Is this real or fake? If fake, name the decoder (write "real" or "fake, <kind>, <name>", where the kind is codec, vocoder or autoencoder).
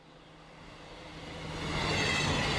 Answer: real